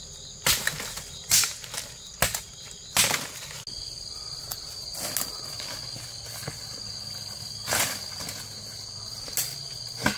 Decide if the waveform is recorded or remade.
recorded